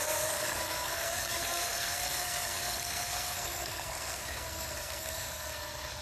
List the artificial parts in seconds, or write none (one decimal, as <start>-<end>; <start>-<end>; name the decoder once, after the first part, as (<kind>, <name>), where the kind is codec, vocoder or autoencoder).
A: 0.0-6.0 (codec, SNAC)